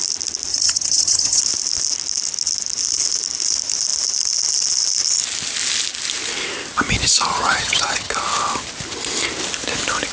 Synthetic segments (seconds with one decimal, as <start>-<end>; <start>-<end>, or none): 0.5-1.4; 7.3-8.1